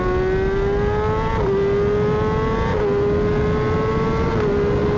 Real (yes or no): yes